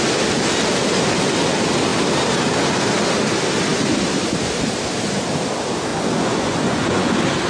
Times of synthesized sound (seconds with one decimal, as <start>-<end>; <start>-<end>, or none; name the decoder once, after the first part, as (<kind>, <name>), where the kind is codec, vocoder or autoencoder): 5.9-7.1 (vocoder, Vocos)